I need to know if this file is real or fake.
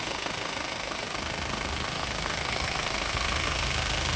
fake